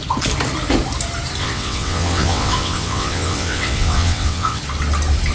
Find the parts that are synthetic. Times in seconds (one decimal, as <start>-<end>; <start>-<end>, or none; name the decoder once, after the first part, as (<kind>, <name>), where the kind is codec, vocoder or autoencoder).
1.4-4.6 (vocoder, WaveNeXt)